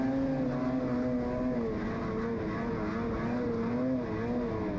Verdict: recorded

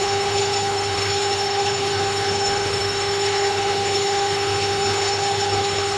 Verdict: remade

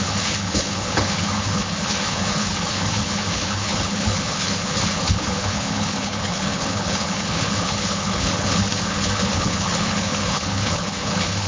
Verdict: remade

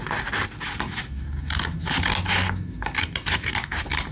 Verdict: recorded